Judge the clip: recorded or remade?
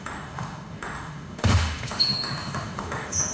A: remade